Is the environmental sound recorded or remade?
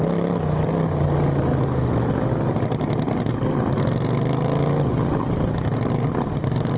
recorded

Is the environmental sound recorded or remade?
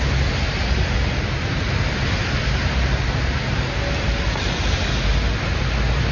recorded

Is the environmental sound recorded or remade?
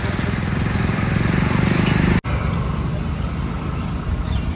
recorded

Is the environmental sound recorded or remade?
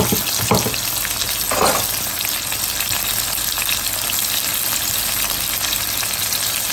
recorded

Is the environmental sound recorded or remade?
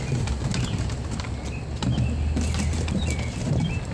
recorded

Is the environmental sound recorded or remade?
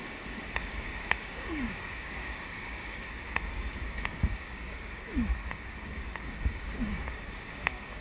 remade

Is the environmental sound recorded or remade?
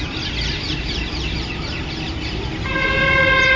recorded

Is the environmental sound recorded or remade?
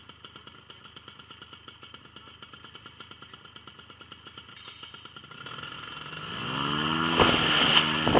recorded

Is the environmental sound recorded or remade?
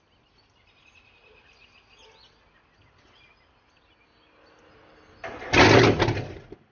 recorded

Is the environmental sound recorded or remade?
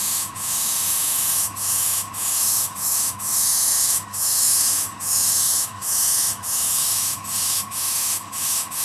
remade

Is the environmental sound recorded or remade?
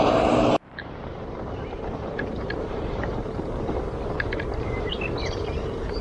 remade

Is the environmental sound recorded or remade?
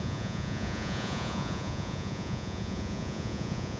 remade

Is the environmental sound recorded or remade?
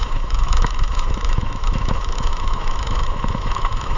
remade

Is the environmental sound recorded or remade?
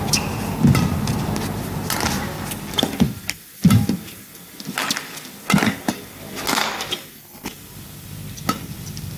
recorded